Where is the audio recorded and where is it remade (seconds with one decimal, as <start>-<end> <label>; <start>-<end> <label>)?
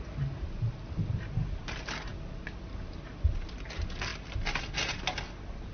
0.0-4.1 recorded; 4.1-4.7 remade; 4.7-5.7 recorded